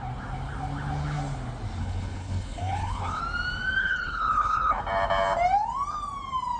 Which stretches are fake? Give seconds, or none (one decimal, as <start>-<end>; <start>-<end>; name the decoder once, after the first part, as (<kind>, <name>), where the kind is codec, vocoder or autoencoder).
1.8-3.2 (codec, HILCodec); 3.8-4.8

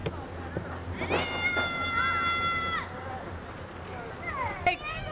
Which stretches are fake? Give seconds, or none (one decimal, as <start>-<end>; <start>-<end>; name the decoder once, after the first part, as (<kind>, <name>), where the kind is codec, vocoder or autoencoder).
none

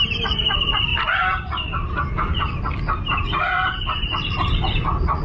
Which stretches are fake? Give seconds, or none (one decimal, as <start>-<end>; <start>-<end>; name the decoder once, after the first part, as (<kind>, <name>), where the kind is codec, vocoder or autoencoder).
0.0-0.9 (vocoder, BigVGAN v2); 3.4-5.2

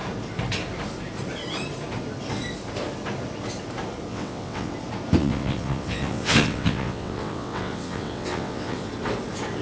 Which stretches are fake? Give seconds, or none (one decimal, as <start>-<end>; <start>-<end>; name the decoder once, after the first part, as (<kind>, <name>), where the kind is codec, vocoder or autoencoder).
4.1-4.7 (vocoder, WaveNeXt); 5.2-8.9

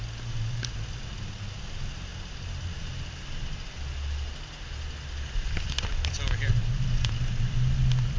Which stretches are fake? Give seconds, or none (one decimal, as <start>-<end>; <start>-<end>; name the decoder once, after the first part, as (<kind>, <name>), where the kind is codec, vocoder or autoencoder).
none